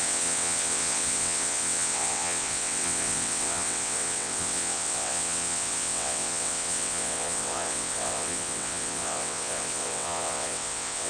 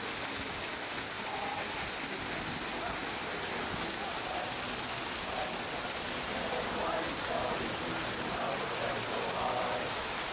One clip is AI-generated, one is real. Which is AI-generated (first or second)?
first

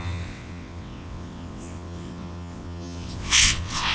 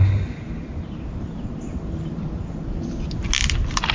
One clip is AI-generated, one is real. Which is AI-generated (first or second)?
first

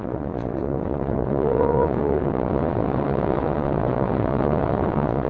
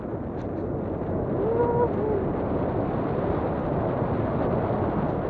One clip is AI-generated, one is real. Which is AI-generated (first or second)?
first